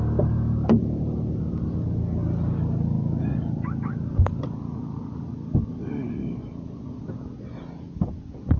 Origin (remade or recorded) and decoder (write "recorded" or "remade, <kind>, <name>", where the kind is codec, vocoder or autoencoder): recorded